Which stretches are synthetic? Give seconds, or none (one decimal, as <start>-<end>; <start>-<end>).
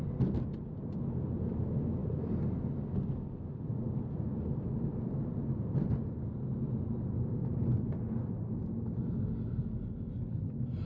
none